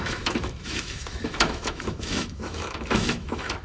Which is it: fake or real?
fake